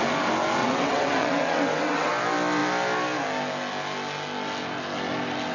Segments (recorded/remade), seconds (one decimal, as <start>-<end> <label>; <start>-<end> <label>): 0.0-0.6 recorded; 0.6-2.1 remade; 2.1-5.5 recorded